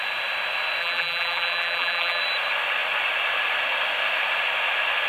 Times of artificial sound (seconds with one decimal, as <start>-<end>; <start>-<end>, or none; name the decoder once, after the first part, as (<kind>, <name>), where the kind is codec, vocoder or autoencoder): 0.8-2.2 (vocoder, BigVGAN v2)

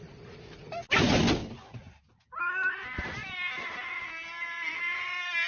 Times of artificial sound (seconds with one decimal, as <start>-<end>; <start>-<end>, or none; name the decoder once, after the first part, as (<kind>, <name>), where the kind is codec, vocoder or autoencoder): none

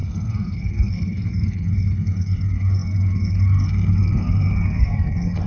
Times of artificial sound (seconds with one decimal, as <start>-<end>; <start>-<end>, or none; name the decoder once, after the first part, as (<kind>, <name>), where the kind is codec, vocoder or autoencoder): 0.0-5.5 (codec, SNAC)

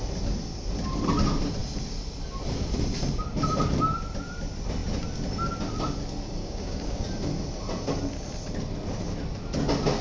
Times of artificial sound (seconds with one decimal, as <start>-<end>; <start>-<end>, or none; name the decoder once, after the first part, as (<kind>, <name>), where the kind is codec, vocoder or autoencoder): 6.4-7.0 (codec, DAC)